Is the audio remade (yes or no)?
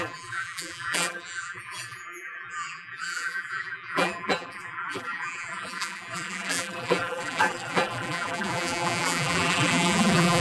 yes